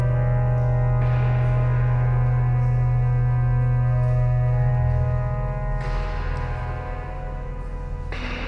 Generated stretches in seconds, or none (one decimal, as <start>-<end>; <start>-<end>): none